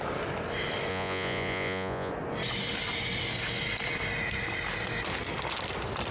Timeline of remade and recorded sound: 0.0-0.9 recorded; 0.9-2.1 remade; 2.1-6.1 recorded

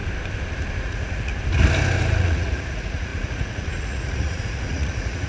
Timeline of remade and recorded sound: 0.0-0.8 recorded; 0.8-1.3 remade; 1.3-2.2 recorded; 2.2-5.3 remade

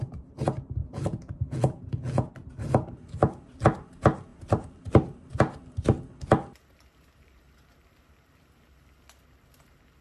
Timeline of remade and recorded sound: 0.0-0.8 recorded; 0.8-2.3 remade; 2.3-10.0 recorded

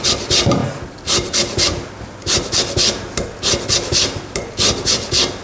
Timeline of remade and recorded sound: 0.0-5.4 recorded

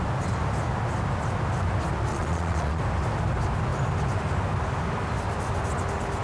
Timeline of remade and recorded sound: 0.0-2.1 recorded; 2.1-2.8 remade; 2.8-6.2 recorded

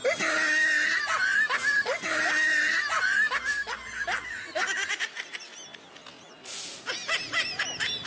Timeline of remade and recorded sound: 0.0-8.1 recorded

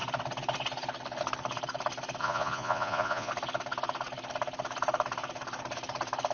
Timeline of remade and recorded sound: 0.0-2.2 recorded; 2.2-3.3 remade; 3.3-6.3 recorded